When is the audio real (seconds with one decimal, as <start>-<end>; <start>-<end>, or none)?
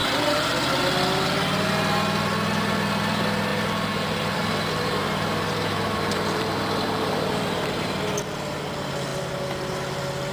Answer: 0.0-3.5; 8.0-10.3